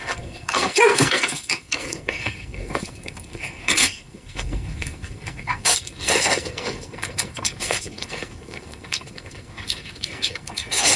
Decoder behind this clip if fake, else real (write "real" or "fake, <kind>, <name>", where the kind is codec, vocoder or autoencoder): fake, codec, SNAC